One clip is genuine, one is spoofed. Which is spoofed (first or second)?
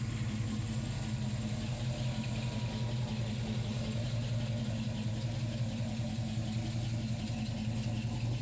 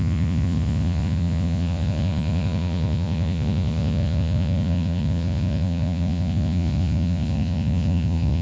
second